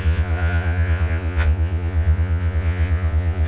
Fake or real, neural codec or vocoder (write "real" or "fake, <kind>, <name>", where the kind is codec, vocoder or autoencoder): fake, vocoder, Vocos